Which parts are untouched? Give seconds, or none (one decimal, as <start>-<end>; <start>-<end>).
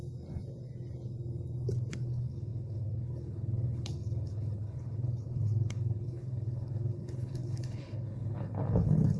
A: 0.0-1.9